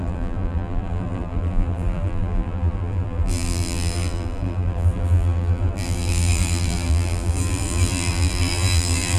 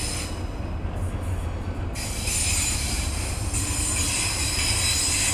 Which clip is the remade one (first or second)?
first